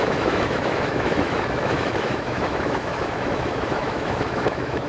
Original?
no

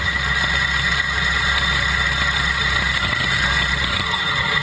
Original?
yes